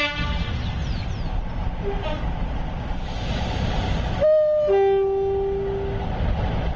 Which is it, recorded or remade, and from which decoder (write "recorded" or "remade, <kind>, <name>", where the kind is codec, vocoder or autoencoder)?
recorded